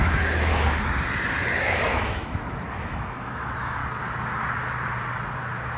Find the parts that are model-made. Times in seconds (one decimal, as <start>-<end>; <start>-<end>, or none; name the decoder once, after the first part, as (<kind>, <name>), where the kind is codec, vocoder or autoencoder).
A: 0.0-0.5 (autoencoder, DAC-VAE); 1.6-3.8